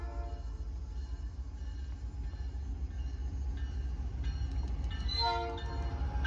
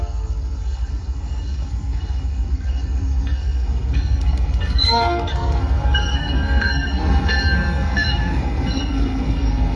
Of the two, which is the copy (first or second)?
second